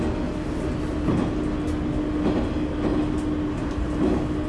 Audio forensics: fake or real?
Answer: real